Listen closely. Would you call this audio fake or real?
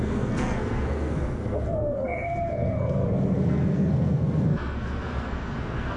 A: fake